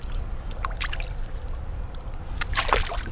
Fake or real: real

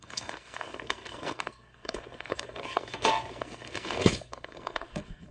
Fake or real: fake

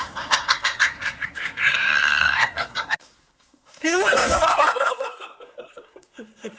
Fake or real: fake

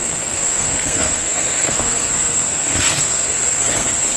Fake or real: fake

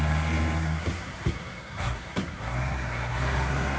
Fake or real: fake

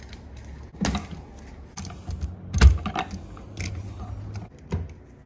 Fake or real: real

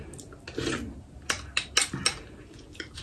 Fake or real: real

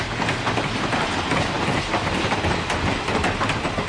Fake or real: real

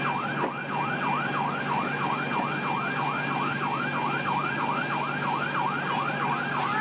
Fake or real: real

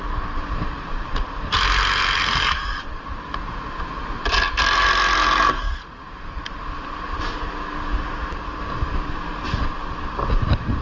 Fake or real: real